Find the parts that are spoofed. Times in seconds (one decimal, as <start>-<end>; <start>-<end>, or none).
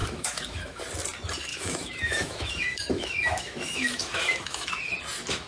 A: 0.0-0.8; 1.5-4.8